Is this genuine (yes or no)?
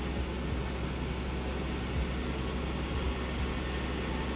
yes